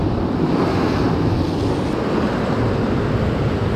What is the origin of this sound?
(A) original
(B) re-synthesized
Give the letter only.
A